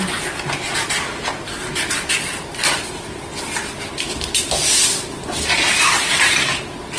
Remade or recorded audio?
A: recorded